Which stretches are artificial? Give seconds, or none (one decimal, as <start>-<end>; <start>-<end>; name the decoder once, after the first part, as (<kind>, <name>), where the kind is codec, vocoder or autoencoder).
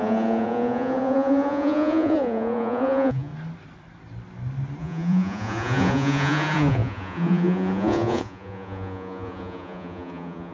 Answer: 0.0-3.3 (vocoder, Vocos); 4.8-10.5